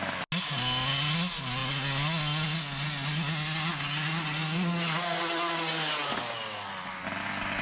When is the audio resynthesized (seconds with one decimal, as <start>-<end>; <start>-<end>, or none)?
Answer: none